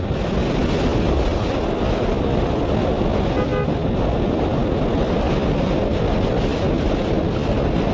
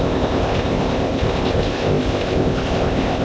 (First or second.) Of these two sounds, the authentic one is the first